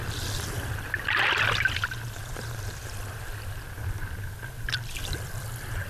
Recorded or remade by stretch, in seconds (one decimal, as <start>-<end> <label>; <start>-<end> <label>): 0.0-0.7 remade; 0.7-2.2 recorded; 2.2-5.9 remade